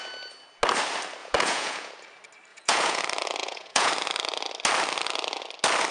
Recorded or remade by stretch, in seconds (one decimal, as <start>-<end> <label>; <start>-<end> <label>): 0.0-1.2 recorded; 1.2-1.9 remade; 1.9-2.5 recorded; 2.5-3.0 remade; 3.0-3.4 recorded; 3.4-3.9 remade; 3.9-5.9 recorded